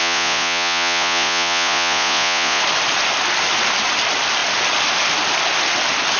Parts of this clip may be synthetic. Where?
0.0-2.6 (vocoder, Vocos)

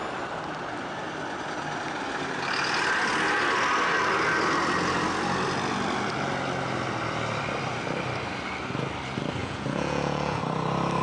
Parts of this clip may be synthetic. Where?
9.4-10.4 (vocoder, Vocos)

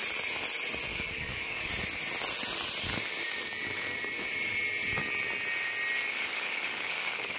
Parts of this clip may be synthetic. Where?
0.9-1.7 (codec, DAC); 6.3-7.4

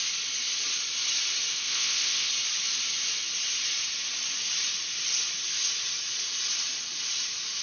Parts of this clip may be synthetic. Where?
1.5-2.3 (codec, ZipCodec)

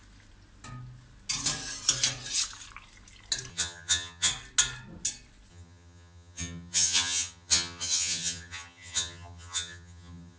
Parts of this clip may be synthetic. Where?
3.5-4.3 (vocoder, HiFi-GAN); 5.5-10.4